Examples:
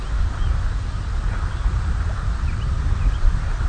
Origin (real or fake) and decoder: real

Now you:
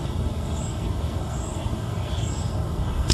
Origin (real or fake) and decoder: fake, codec, SNAC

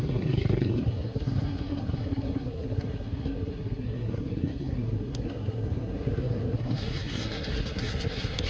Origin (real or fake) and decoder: fake, codec, SNAC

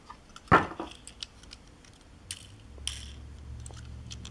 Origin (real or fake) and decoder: real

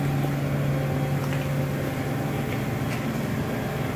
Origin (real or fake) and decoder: real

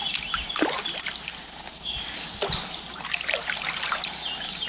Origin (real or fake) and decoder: real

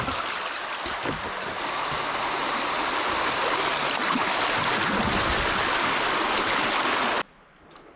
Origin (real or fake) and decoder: real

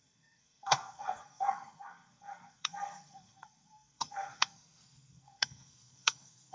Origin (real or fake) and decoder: fake, codec, SNAC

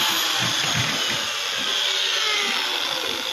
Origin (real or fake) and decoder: real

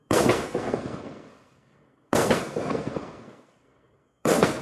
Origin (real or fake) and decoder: fake, codec, SNAC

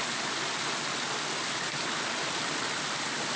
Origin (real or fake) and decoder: real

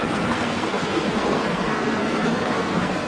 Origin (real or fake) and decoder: fake, codec, SNAC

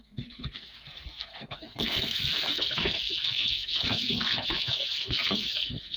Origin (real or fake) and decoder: fake, codec, SNAC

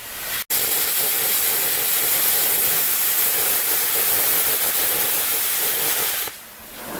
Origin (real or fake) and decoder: real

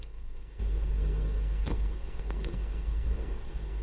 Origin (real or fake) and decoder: fake, codec, SNAC